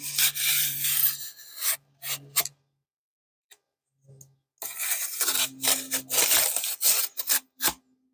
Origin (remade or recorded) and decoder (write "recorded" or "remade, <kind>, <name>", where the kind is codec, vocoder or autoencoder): recorded